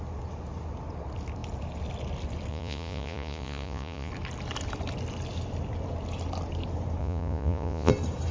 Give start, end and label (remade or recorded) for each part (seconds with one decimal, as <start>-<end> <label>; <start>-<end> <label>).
0.0-2.5 recorded; 2.5-4.1 remade; 4.1-7.0 recorded; 7.0-7.9 remade; 7.9-8.3 recorded